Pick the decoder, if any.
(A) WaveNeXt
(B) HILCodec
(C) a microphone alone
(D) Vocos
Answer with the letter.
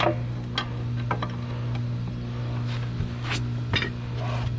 C